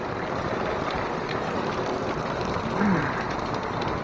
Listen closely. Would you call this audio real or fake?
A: real